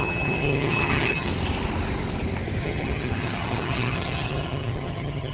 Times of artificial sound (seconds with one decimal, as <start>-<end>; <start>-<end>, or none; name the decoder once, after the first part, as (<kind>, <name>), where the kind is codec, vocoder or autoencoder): 0.0-1.3 (vocoder, HiFi-GAN); 2.6-5.3